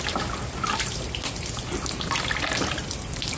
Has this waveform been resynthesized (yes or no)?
no